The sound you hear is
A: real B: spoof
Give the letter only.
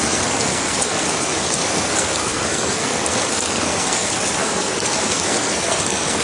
B